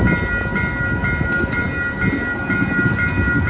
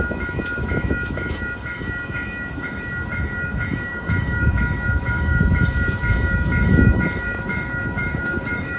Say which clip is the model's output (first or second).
second